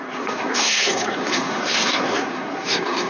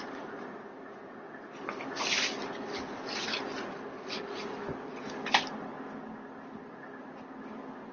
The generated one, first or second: first